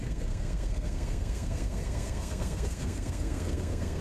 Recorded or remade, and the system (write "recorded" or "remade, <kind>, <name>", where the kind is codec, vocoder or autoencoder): remade, codec, SNAC